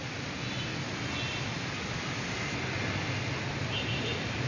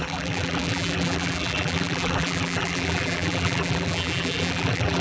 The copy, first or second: second